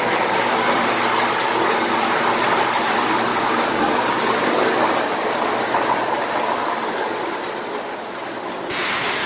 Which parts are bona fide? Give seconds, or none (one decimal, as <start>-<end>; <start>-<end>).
0.0-3.3; 4.7-9.3